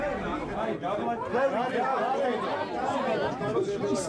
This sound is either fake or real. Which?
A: real